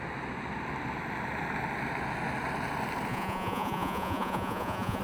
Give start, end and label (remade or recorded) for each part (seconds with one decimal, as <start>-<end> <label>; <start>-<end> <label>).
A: 0.0-3.1 recorded; 3.1-5.0 remade